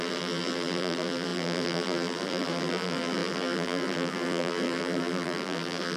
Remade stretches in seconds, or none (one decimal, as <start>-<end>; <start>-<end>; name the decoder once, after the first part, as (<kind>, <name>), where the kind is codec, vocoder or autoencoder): 0.0-6.0 (vocoder, BigVGAN v2)